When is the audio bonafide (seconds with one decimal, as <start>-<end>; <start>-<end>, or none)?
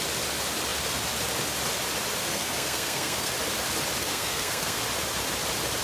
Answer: 0.0-2.2; 3.3-4.0; 4.8-5.8